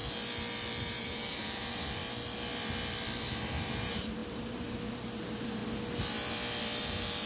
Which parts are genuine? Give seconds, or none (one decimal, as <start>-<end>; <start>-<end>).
0.0-0.8; 2.0-3.2; 5.6-6.8

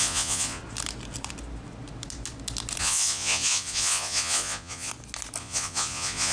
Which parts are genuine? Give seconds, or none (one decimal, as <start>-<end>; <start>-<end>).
0.6-2.8; 4.9-5.4

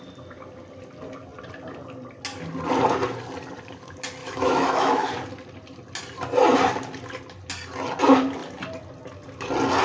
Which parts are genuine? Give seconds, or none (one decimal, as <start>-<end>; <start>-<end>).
0.0-4.2; 5.1-9.8

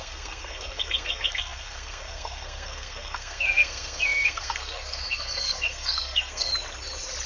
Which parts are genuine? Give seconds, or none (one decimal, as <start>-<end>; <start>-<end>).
6.5-7.3

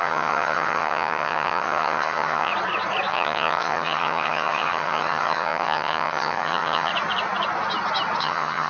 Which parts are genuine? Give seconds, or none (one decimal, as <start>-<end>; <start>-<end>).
2.5-3.1; 6.9-8.2

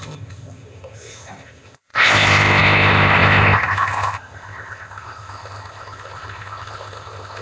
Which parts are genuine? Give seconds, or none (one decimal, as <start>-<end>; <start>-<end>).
none

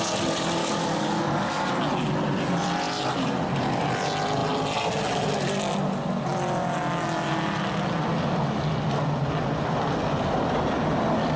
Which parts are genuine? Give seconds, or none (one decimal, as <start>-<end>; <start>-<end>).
0.0-0.6; 1.7-11.4